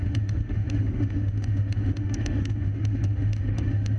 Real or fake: fake